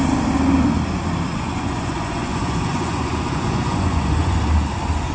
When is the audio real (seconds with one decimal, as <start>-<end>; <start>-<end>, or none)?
0.0-1.3; 4.4-5.1